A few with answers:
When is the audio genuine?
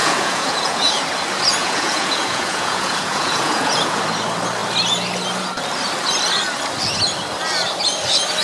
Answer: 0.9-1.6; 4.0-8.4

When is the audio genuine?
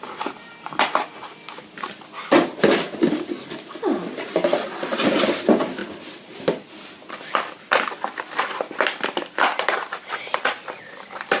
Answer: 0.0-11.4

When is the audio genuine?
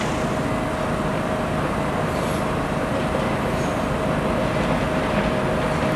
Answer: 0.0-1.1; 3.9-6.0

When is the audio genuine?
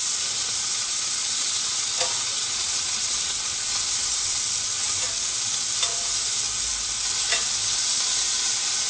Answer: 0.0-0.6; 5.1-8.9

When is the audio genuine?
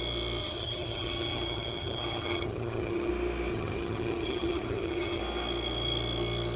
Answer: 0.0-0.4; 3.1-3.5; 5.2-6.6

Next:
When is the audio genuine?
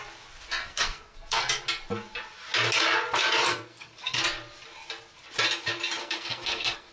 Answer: 0.0-0.6; 1.4-3.5; 4.2-6.0